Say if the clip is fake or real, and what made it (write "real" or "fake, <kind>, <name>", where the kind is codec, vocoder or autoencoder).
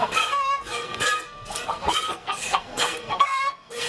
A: fake, codec, SNAC